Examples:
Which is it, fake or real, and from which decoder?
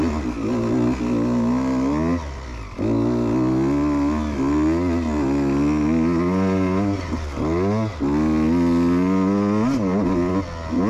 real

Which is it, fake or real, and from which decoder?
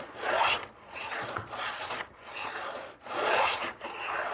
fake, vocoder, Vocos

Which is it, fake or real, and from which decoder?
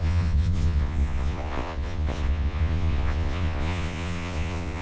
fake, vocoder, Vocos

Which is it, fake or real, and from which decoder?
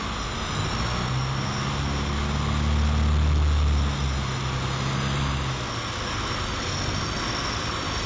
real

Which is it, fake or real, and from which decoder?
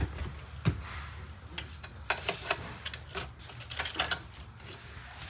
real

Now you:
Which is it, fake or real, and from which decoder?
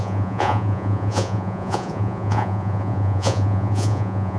fake, vocoder, Vocos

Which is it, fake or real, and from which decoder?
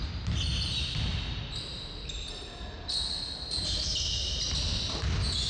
real